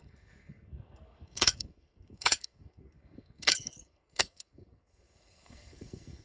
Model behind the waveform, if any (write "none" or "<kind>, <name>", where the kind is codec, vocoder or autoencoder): codec, SNAC